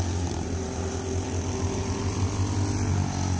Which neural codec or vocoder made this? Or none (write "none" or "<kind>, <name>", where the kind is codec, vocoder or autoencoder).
none